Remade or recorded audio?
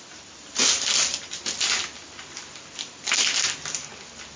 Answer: recorded